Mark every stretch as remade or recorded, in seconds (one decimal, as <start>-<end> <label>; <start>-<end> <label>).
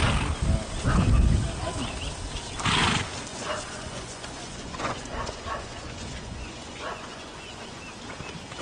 0.0-3.3 recorded; 3.3-7.8 remade; 7.8-8.6 recorded